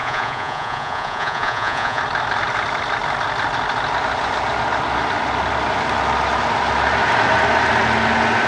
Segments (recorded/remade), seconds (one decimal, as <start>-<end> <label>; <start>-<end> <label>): 0.0-2.0 remade; 2.0-8.5 recorded